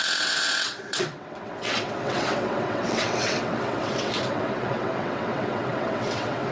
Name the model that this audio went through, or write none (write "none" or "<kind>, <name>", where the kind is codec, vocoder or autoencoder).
vocoder, WaveNeXt